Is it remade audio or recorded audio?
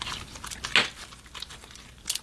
recorded